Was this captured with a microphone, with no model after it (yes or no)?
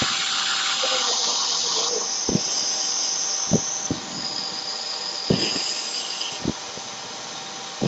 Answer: yes